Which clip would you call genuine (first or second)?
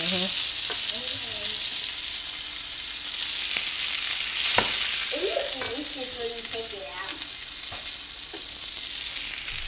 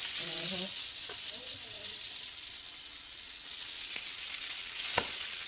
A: first